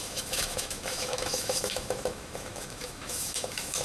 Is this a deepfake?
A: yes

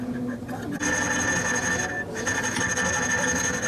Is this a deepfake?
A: no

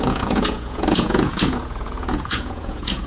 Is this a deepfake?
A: yes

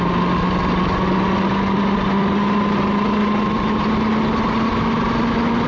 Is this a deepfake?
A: no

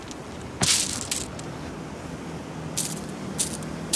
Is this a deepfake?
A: no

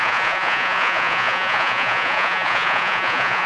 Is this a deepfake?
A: yes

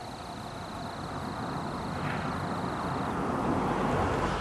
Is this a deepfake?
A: no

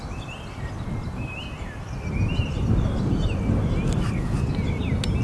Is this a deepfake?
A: no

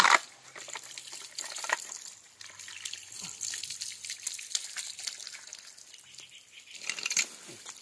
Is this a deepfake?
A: no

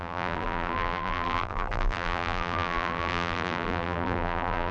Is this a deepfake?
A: yes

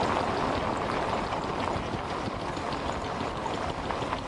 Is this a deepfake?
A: no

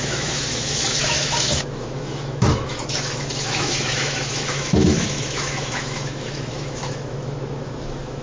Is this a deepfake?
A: yes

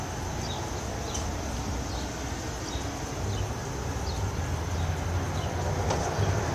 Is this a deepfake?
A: no